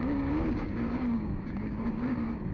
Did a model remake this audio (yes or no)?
yes